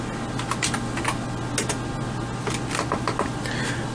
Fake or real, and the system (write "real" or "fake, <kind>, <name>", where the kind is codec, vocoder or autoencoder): real